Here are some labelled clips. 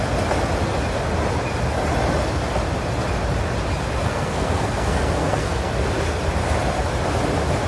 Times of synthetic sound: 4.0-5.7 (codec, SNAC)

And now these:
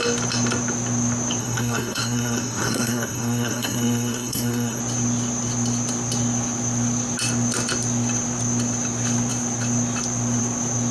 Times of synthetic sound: 1.4-4.8 (codec, SNAC)

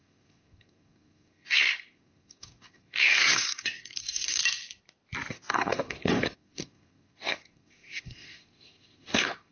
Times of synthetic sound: 0.0-4.4 (codec, SNAC); 5.3-9.5

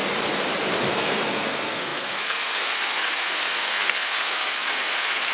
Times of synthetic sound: 0.9-5.3 (codec, SNAC)

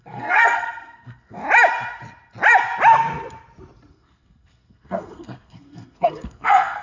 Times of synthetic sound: 0.0-1.4 (codec, SNAC); 3.9-6.8

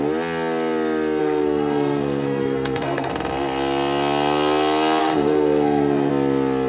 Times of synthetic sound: 1.2-3.1 (codec, SNAC); 5.0-6.1